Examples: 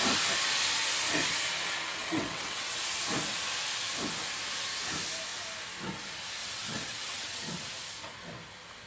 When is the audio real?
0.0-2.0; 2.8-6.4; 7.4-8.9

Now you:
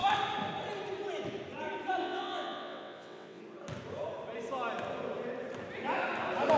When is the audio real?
0.0-2.0; 3.4-6.6

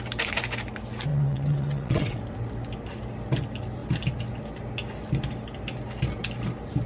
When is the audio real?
0.0-1.1; 2.2-6.9

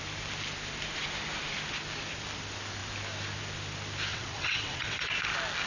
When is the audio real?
0.0-4.1; 5.1-5.7

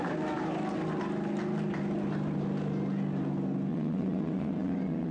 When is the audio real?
0.0-3.7

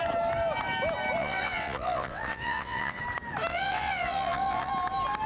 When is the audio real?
0.0-1.2; 3.0-3.5; 4.7-5.3